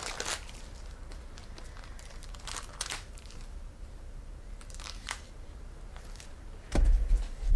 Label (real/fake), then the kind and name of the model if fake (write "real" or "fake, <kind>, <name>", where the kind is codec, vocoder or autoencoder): fake, vocoder, BigVGAN v2